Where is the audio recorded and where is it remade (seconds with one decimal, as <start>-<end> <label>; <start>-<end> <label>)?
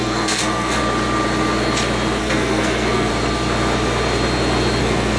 0.0-0.8 remade; 0.8-2.2 recorded; 2.2-3.1 remade; 3.1-4.8 recorded; 4.8-5.2 remade